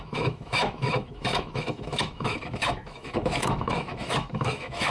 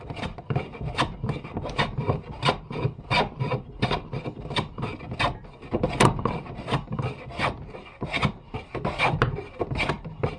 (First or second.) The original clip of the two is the second